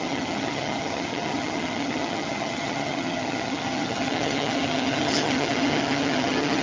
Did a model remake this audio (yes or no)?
yes